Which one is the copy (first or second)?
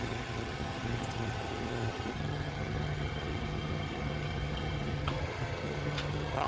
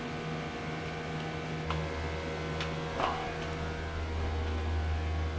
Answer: first